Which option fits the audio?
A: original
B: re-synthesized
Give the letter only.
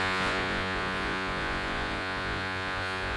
B